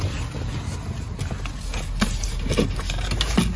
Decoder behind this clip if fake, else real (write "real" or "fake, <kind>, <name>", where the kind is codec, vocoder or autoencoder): real